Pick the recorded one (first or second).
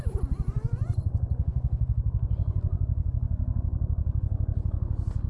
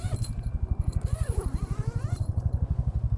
first